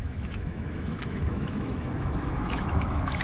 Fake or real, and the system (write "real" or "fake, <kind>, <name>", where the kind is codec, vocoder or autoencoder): fake, autoencoder, DAC-VAE